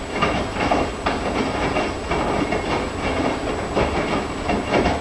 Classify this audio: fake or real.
real